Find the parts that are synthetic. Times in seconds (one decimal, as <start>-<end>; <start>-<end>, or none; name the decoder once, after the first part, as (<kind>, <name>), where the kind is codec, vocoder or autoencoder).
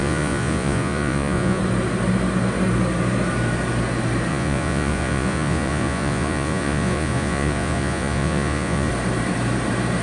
0.0-1.6 (vocoder, Vocos); 4.3-8.9